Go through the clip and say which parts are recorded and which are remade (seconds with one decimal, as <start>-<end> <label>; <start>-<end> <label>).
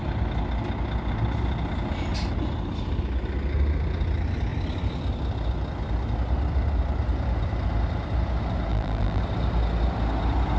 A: 0.0-8.7 recorded; 8.7-9.2 remade; 9.2-10.6 recorded